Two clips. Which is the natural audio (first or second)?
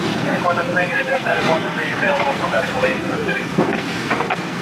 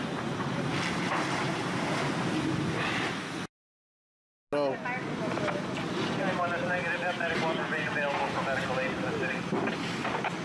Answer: second